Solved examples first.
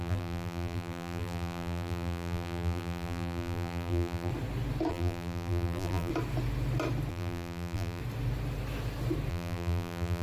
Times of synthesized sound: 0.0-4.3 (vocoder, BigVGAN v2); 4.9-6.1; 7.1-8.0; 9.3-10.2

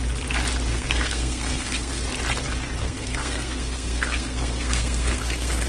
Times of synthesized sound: 0.7-2.0 (codec, SNAC); 2.8-5.7